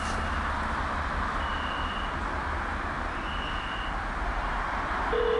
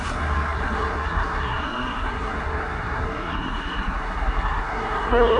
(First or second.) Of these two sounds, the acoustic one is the first